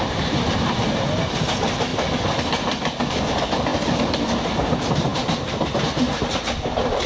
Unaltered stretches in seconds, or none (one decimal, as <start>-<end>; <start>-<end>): 1.9-3.1